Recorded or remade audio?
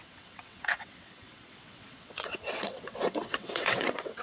remade